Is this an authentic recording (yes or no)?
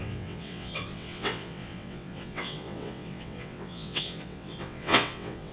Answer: no